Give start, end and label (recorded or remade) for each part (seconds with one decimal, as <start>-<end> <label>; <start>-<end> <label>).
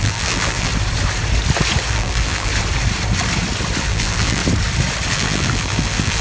0.0-0.7 remade; 0.7-1.9 recorded; 1.9-2.5 remade; 2.5-3.8 recorded; 3.8-4.4 remade; 4.4-5.1 recorded; 5.1-6.2 remade